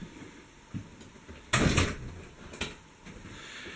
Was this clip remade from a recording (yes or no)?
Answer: no